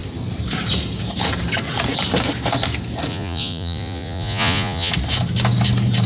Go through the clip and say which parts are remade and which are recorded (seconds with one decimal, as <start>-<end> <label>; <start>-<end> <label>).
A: 0.0-3.1 recorded; 3.1-4.9 remade; 4.9-6.1 recorded